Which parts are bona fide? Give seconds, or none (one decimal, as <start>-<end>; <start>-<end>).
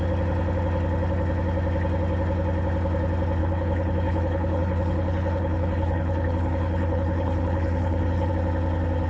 0.0-3.4; 8.3-9.1